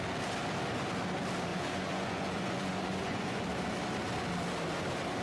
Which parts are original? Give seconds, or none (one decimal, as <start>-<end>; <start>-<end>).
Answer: 0.0-1.5; 3.4-5.2